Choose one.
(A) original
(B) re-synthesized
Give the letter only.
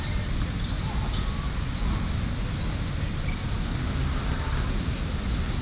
A